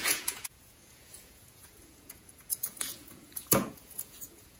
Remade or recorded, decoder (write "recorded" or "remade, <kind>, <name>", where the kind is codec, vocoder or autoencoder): remade, vocoder, Vocos